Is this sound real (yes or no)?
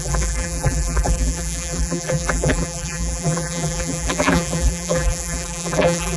no